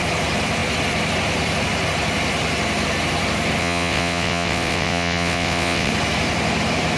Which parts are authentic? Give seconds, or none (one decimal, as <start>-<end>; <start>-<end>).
0.0-3.6; 5.9-7.0